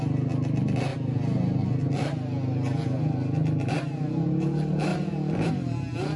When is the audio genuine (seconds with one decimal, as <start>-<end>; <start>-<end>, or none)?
0.0-4.9; 5.5-6.2